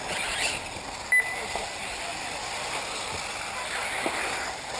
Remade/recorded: recorded